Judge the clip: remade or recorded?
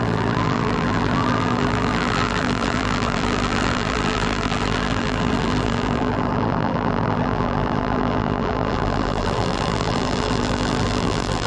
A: remade